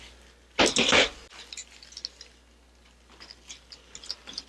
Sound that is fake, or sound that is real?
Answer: real